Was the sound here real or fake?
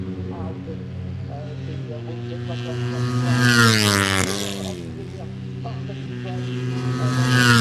real